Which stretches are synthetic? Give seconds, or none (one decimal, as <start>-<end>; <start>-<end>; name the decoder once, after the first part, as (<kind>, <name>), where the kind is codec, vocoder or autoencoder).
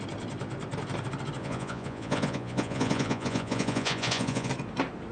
1.4-4.5 (vocoder, Vocos)